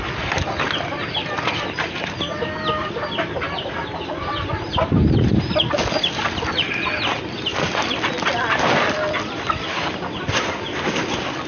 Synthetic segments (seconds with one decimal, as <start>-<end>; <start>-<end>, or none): none